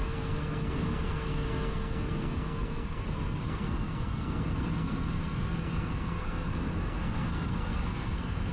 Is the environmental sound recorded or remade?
remade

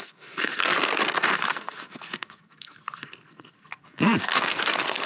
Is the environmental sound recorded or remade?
remade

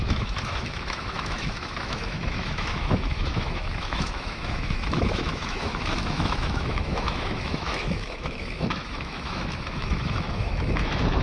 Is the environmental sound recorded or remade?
remade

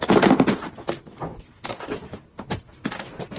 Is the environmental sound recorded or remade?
recorded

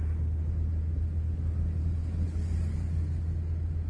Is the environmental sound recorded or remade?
recorded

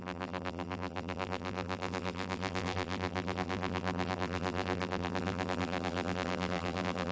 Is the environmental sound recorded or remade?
remade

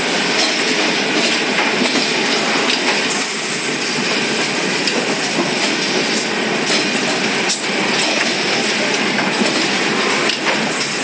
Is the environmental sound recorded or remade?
recorded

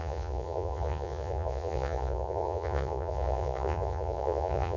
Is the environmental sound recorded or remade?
remade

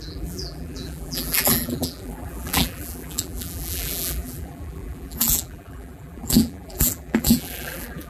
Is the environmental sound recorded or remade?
remade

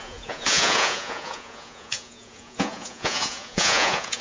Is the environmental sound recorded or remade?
remade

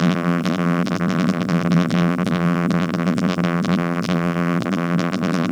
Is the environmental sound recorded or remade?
remade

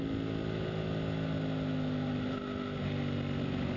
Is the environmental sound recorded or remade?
recorded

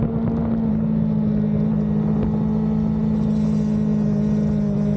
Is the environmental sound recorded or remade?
recorded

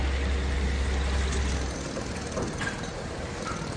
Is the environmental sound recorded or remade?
recorded